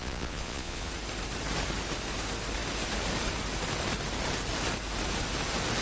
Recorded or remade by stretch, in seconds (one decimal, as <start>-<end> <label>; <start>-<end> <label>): 0.0-0.9 remade; 0.9-5.8 recorded